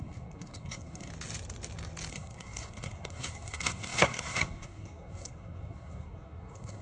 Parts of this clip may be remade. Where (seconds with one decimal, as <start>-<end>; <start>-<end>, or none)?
0.0-1.1; 2.1-6.8